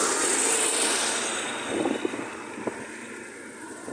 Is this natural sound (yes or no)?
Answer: yes